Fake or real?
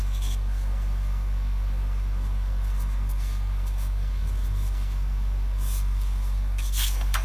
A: fake